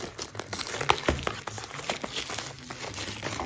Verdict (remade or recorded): recorded